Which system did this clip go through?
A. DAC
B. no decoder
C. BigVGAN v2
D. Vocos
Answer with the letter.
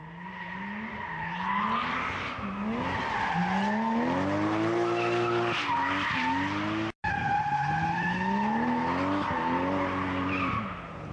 B